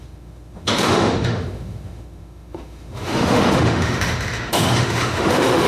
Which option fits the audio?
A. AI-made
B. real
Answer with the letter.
A